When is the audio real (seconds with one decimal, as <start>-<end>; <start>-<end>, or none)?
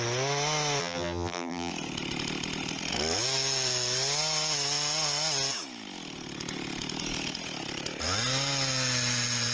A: 0.0-0.8; 1.7-9.5